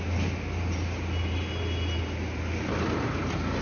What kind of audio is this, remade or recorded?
recorded